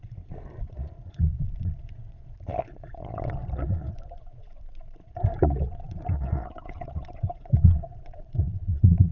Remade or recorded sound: remade